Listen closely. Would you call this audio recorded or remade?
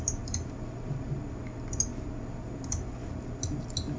recorded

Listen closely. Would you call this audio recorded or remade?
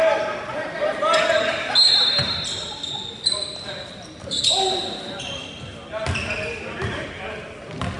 recorded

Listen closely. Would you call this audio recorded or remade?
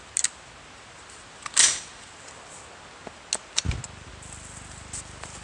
recorded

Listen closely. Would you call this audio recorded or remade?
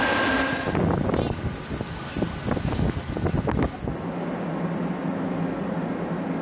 recorded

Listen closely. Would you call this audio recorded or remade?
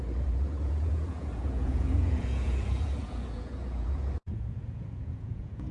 remade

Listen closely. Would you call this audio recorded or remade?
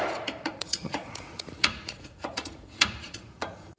remade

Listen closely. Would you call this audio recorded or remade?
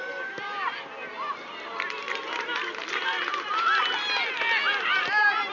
recorded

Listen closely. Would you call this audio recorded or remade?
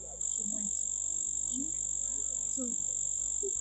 recorded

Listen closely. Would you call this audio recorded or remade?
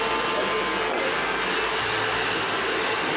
recorded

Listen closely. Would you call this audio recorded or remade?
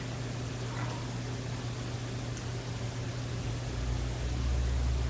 recorded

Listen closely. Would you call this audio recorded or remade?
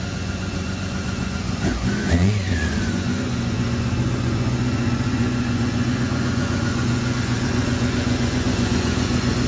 remade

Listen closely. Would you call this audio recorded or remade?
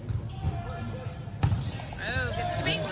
recorded